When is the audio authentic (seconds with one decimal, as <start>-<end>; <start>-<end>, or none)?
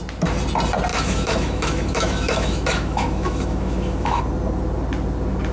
0.0-0.9; 4.2-5.5